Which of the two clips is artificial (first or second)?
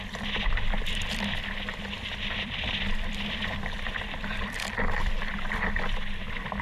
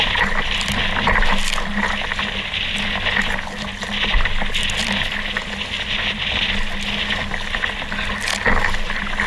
first